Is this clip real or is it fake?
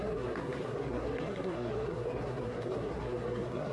fake